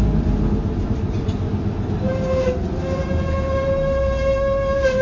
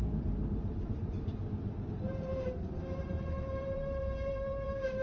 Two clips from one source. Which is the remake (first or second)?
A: second